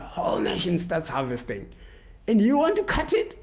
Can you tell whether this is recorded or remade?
remade